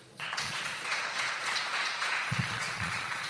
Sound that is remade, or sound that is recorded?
remade